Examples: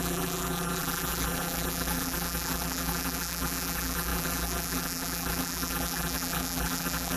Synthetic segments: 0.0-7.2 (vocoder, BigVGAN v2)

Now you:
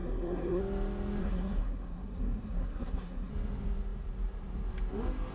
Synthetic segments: 0.0-0.6 (codec, SNAC); 1.2-3.3

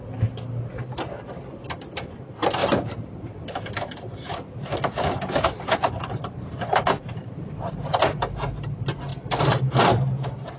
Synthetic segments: 2.6-7.7 (vocoder, BigVGAN v2); 9.1-10.6

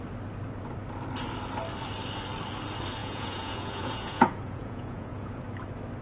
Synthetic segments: 3.0-5.4 (vocoder, Vocos)

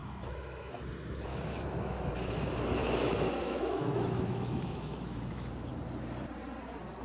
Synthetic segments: 0.0-0.9 (autoencoder, DAC-VAE); 1.3-2.1; 2.8-5.5